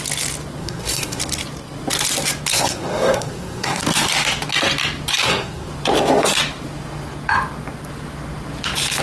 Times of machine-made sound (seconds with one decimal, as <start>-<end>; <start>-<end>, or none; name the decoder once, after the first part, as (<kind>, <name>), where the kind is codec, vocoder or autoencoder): 0.6-1.2 (codec, SNAC); 2.5-3.8; 5.2-5.7